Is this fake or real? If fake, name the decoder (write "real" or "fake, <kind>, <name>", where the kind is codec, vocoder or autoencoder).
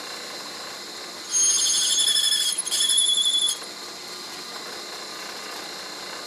real